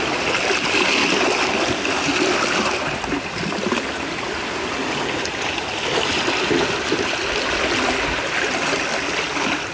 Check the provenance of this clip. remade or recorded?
recorded